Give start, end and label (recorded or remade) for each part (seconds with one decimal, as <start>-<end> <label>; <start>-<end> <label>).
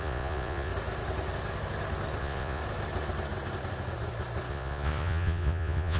0.0-0.7 remade; 0.7-2.2 recorded; 2.2-2.6 remade; 2.6-4.5 recorded; 4.5-6.0 remade